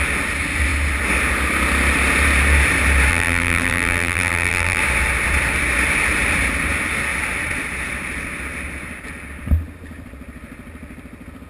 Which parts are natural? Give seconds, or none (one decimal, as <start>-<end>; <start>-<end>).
0.0-3.1; 4.8-11.5